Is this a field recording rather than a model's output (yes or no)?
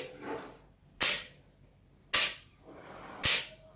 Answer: yes